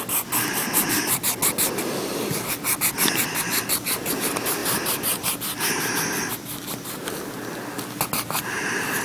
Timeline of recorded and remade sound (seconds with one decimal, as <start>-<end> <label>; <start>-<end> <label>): 0.0-9.0 recorded